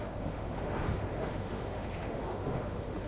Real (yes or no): no